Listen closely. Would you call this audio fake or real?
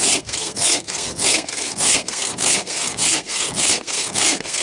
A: fake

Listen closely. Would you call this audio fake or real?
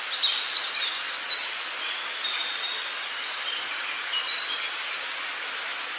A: real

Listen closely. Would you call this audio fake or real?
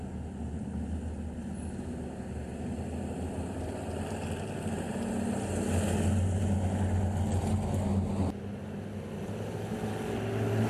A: real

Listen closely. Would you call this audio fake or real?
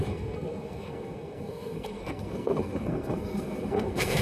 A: fake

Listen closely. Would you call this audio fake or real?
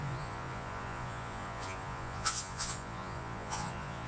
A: fake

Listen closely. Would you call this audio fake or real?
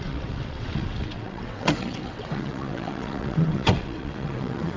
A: fake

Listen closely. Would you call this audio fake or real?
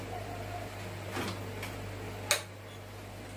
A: real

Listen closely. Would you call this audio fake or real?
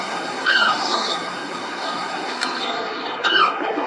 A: fake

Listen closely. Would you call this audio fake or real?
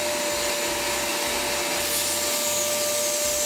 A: real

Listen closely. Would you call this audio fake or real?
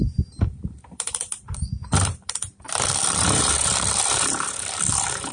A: fake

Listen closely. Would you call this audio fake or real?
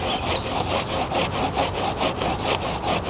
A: real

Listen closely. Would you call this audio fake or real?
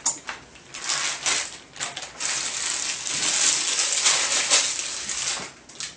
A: real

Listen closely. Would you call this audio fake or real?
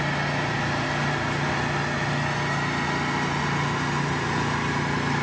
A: real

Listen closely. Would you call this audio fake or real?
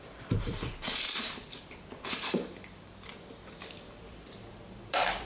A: fake